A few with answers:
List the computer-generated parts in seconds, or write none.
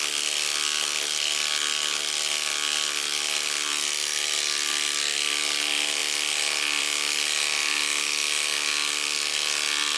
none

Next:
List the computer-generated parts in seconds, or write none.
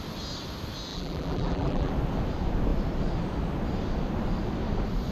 0.9-1.9 (vocoder, BigVGAN v2)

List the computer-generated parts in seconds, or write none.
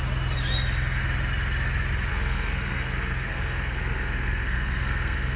2.1-5.4 (codec, SNAC)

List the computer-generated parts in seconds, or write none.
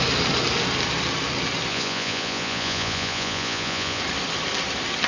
1.7-4.0 (vocoder, Vocos)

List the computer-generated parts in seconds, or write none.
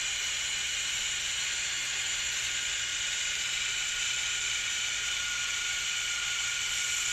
2.9-7.1 (vocoder, BigVGAN v2)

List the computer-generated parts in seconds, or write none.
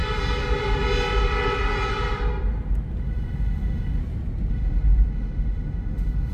3.0-4.0 (autoencoder, DAC-VAE); 4.5-6.3